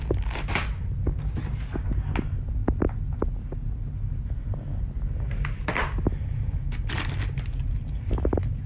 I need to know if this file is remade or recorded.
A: recorded